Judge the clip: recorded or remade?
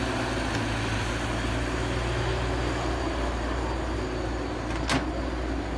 recorded